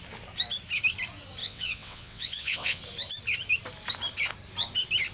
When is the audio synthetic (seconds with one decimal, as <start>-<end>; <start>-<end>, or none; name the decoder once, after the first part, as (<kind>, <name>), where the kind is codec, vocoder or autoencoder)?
1.4-2.8 (vocoder, WaveNeXt)